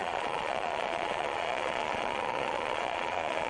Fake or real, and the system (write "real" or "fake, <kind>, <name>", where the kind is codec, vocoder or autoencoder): fake, vocoder, Vocos